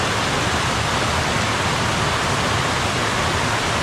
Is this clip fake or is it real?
real